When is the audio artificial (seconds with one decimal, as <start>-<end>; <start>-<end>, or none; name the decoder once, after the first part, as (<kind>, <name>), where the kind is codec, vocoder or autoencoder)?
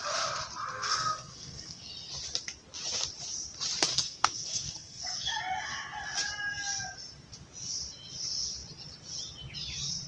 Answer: 0.7-1.9 (codec, SNAC); 3.9-5.4